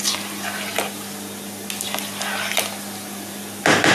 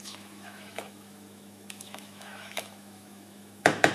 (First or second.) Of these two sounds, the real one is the first